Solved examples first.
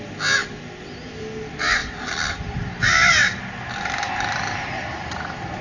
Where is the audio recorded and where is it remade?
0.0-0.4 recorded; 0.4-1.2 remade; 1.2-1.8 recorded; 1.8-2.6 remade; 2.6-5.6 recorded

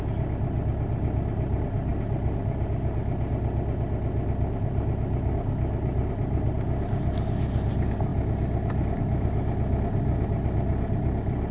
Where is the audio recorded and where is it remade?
0.0-11.5 recorded

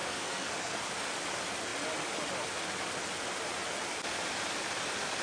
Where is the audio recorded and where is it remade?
0.0-0.8 remade; 0.8-5.2 recorded

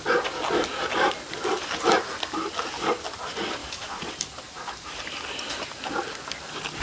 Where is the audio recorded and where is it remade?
0.0-3.6 recorded; 3.6-4.1 remade; 4.1-6.8 recorded